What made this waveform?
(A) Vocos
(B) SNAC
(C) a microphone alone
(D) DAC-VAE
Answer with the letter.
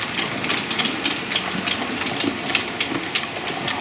C